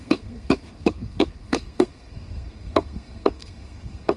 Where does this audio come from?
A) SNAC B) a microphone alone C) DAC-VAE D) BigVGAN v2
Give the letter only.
A